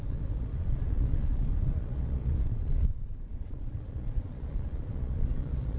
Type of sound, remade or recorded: remade